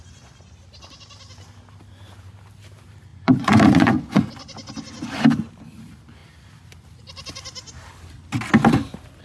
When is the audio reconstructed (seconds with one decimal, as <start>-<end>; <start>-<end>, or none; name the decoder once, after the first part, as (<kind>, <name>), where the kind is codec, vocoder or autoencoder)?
3.1-4.3 (vocoder, Vocos)